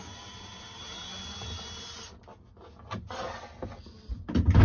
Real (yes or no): yes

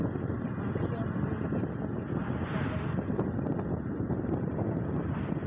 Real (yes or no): yes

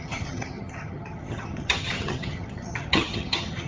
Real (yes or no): no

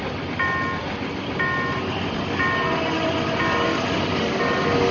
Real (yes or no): yes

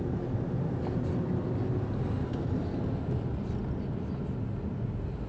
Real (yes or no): yes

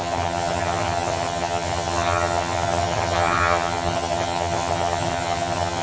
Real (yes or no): no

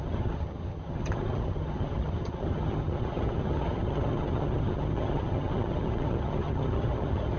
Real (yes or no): no